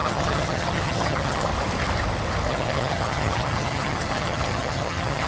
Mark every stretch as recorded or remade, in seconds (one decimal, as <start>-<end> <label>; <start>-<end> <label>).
0.0-1.5 remade; 1.5-2.5 recorded; 2.5-5.3 remade